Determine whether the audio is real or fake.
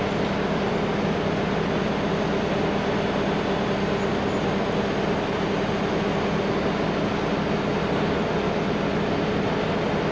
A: real